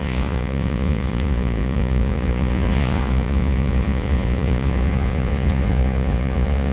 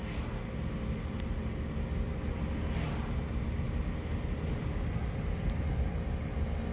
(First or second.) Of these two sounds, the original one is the second